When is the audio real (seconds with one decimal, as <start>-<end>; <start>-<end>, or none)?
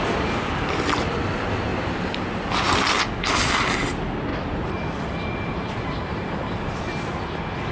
0.0-1.7; 2.4-4.3; 7.0-7.7